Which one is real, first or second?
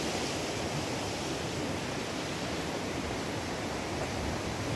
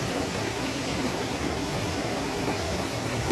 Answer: first